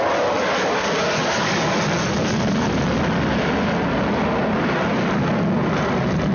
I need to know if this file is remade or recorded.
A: recorded